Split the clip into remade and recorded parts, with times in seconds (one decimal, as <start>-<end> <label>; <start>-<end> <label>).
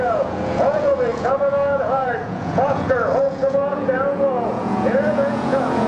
0.0-5.9 remade